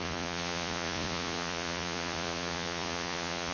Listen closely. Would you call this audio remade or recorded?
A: remade